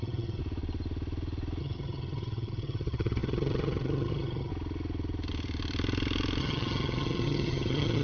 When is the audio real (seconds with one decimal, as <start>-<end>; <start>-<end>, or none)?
0.4-1.6; 4.5-6.4